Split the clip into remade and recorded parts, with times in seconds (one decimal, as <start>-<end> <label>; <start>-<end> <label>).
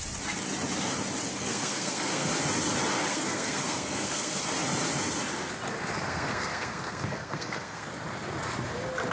0.0-1.3 recorded; 1.3-2.3 remade; 2.3-3.1 recorded; 3.1-4.4 remade; 4.4-5.8 recorded; 5.8-7.9 remade; 7.9-9.1 recorded